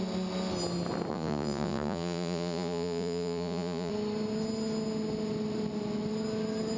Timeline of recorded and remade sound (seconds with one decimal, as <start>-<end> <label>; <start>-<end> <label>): 0.0-1.1 recorded; 1.1-3.9 remade; 3.9-6.8 recorded